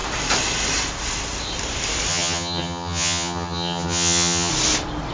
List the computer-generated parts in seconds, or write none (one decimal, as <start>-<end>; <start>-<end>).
2.1-4.5